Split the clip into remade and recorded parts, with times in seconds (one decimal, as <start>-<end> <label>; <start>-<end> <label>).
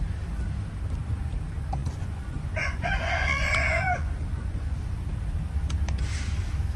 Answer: 0.0-1.8 recorded; 1.8-4.8 remade; 4.8-6.8 recorded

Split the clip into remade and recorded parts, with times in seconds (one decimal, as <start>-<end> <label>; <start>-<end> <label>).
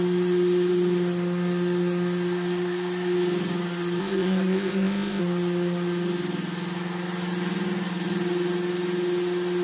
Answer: 0.0-4.0 recorded; 4.0-5.2 remade; 5.2-9.6 recorded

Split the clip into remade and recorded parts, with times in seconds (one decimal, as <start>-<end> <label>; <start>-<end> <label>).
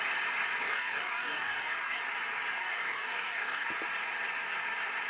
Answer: 0.0-0.6 recorded; 0.6-2.0 remade; 2.0-2.6 recorded; 2.6-3.7 remade; 3.7-5.1 recorded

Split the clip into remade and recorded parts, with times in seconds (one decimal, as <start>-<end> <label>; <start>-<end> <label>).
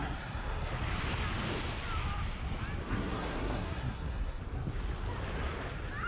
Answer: 0.0-0.7 remade; 0.7-2.9 recorded; 2.9-4.4 remade; 4.4-6.1 recorded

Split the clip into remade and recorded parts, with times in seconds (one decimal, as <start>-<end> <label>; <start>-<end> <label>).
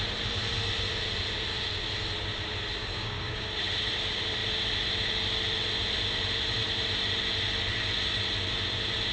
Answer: 0.0-2.8 recorded; 2.8-3.6 remade; 3.6-9.1 recorded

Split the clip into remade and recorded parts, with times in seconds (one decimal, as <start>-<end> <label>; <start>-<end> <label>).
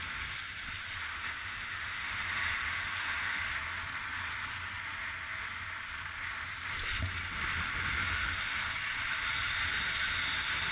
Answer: 0.0-1.0 recorded; 1.0-3.5 remade; 3.5-8.0 recorded; 8.0-8.7 remade; 8.7-10.7 recorded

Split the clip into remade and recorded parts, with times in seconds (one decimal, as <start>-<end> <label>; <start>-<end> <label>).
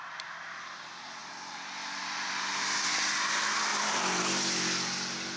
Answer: 0.0-1.2 recorded; 1.2-2.8 remade; 2.8-3.7 recorded; 3.7-4.2 remade; 4.2-5.4 recorded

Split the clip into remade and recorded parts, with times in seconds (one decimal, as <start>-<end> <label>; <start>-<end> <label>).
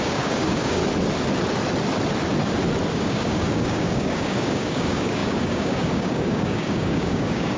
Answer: 0.0-0.8 remade; 0.8-2.9 recorded; 2.9-7.6 remade